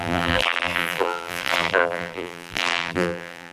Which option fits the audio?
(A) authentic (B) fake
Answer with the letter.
B